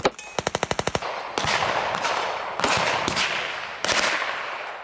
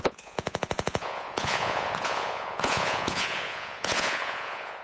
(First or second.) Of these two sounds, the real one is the first